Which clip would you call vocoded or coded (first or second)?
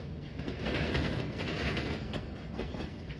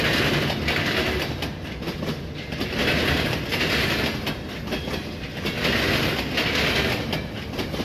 first